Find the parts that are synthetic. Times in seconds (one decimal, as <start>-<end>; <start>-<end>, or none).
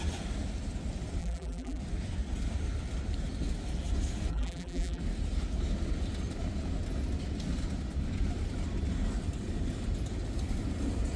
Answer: 1.2-1.8; 4.3-5.0